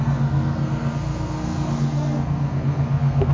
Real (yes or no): no